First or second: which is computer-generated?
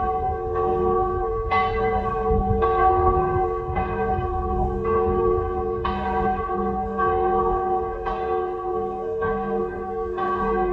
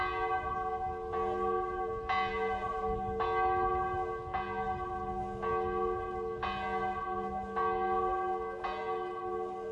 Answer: first